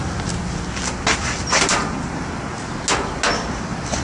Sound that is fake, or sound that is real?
real